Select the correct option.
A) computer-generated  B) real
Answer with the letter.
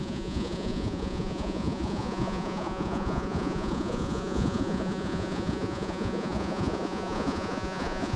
A